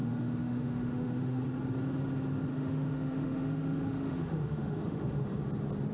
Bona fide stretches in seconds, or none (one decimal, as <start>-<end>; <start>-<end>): 1.4-2.5; 5.4-5.9